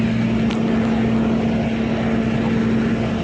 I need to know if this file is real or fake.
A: real